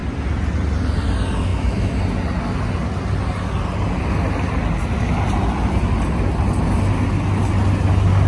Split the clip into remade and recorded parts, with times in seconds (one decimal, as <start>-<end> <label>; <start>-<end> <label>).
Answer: 0.0-1.5 recorded; 1.5-2.0 remade; 2.0-8.3 recorded

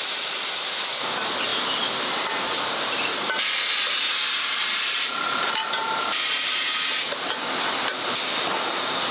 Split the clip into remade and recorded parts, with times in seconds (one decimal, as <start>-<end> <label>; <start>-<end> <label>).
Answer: 0.0-1.5 recorded; 1.5-3.0 remade; 3.0-4.5 recorded; 4.5-7.2 remade; 7.2-9.1 recorded